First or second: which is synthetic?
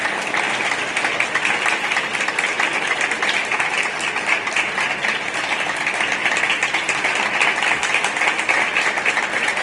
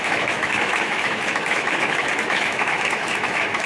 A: second